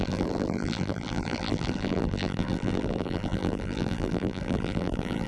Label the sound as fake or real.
fake